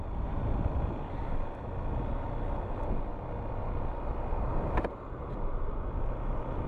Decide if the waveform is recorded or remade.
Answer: recorded